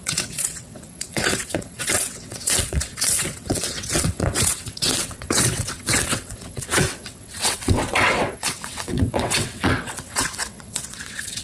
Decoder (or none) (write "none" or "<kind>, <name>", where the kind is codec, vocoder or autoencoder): vocoder, WaveNeXt